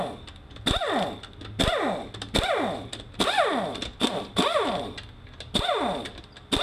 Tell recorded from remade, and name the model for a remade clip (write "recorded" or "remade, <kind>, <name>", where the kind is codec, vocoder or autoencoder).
recorded